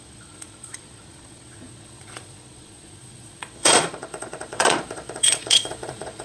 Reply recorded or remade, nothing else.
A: remade